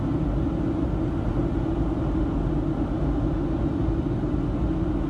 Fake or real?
real